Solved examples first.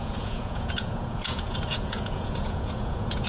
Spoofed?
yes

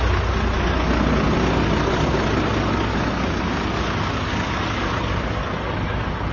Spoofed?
no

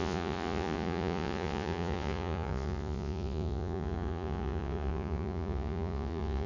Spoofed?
yes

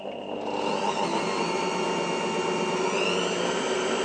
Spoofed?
no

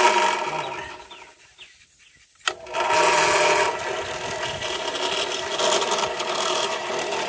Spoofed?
no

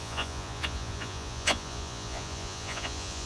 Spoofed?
yes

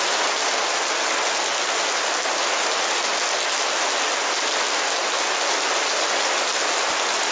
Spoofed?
no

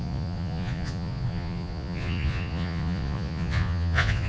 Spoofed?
yes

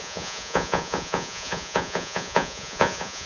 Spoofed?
yes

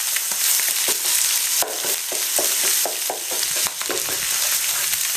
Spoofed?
no